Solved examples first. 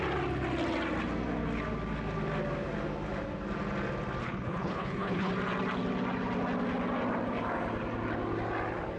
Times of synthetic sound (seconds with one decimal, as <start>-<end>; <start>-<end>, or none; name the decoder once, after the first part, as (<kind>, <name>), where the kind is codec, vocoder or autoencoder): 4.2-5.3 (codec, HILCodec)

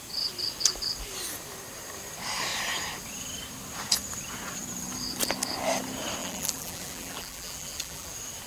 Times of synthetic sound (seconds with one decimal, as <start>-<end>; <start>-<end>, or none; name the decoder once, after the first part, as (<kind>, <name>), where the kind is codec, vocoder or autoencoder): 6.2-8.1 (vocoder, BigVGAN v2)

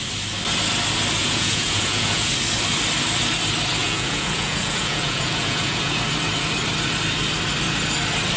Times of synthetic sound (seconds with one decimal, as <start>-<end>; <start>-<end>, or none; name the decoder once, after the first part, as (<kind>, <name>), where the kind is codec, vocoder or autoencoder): 1.2-2.3 (vocoder, Vocos); 3.8-6.0

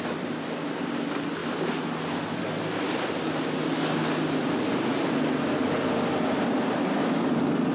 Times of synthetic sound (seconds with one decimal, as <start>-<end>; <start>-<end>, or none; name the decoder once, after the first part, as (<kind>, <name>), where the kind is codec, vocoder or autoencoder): none

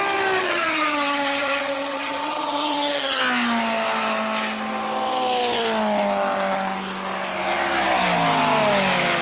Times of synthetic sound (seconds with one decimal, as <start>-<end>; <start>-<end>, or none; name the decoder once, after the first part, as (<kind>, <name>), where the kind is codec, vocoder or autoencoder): 0.4-3.2 (vocoder, HiFi-GAN)

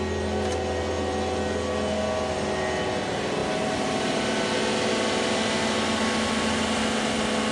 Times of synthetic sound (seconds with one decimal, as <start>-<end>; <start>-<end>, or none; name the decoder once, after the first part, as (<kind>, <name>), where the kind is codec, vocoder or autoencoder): none

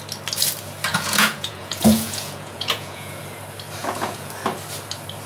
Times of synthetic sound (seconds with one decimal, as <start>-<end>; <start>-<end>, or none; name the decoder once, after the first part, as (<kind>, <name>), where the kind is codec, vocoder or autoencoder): 0.9-3.2 (vocoder, Vocos); 3.8-4.3

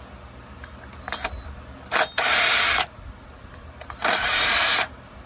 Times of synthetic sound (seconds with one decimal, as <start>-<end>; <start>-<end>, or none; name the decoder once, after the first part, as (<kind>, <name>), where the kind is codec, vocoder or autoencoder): 2.1-5.3 (vocoder, BigVGAN v2)